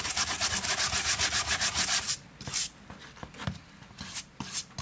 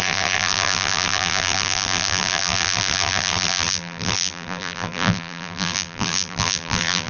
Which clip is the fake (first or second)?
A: second